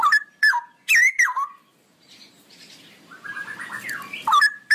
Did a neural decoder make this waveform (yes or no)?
yes